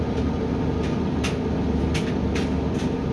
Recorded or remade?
recorded